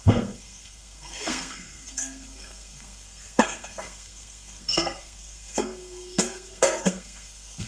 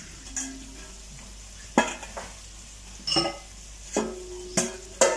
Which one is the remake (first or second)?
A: first